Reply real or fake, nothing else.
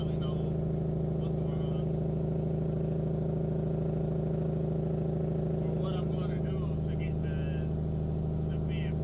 real